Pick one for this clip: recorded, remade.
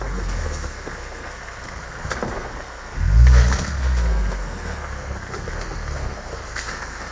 remade